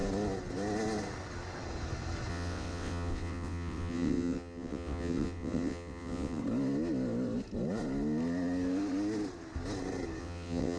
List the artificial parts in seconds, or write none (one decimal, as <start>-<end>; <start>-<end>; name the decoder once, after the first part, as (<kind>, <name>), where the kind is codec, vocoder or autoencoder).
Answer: 2.3-6.4 (vocoder, WaveNeXt); 10.2-10.8